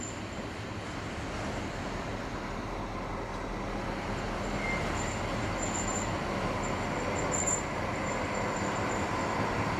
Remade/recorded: recorded